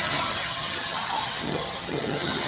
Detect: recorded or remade remade